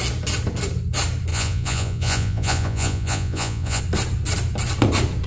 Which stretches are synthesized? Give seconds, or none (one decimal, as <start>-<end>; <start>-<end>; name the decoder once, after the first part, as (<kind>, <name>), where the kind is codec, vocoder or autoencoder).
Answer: 1.3-3.8 (vocoder, Vocos)